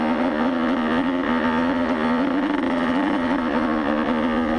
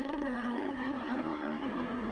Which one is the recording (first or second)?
first